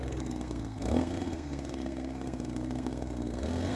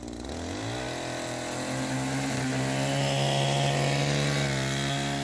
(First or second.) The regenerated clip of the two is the first